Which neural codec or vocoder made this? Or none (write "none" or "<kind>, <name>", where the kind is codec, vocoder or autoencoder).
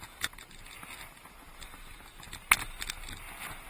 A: none